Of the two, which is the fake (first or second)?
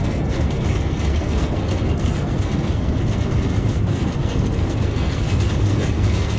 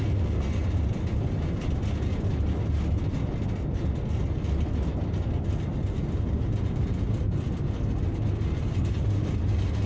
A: first